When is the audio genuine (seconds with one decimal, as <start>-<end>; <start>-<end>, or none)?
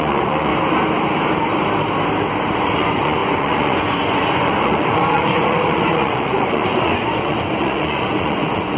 0.5-2.5